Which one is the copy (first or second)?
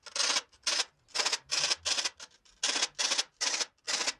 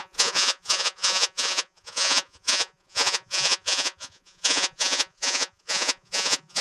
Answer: second